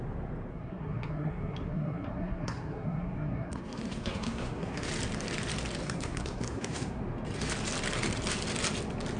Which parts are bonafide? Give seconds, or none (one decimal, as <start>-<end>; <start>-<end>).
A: 0.0-0.5; 4.9-5.8; 7.0-9.2